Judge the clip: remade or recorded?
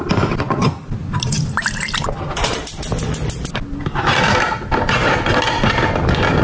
recorded